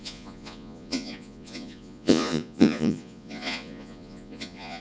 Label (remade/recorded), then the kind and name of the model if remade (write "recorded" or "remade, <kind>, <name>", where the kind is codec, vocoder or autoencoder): remade, vocoder, Vocos